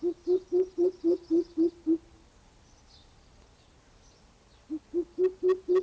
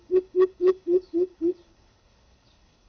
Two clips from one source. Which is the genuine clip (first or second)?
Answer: first